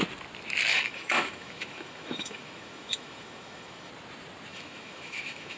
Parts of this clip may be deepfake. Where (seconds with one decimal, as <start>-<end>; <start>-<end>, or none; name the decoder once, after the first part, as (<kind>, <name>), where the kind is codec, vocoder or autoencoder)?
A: 0.7-3.9 (autoencoder, DAC-VAE); 4.5-5.6